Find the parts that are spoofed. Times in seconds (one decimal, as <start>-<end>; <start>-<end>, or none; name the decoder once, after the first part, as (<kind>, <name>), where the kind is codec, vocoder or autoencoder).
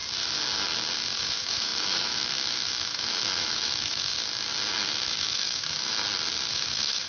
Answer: 1.2-4.1 (autoencoder, DAC-VAE); 4.7-6.0; 6.5-7.1